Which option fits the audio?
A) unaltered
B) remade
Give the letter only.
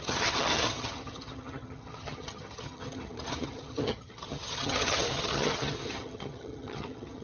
B